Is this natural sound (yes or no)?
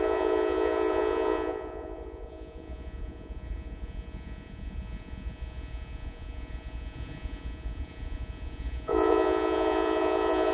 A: no